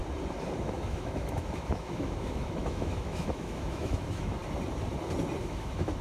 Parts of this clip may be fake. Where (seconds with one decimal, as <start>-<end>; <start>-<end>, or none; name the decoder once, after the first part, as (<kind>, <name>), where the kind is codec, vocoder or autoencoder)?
0.6-4.4 (autoencoder, DAC-VAE); 5.4-6.0